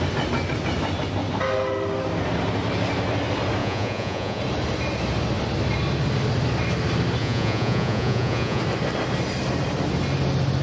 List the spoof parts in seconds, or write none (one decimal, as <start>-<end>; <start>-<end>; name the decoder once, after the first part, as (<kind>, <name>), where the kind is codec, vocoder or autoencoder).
3.6-4.4 (vocoder, Vocos); 7.2-8.6